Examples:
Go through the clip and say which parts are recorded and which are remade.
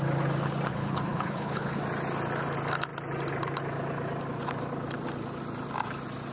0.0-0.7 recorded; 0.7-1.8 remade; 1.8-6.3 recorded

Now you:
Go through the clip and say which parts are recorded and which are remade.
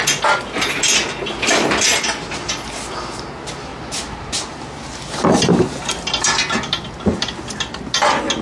0.0-8.4 recorded